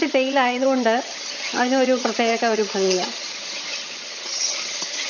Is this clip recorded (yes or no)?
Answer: no